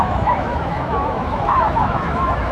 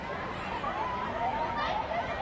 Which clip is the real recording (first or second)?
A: second